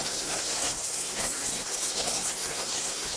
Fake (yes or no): yes